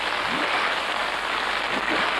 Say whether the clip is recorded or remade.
recorded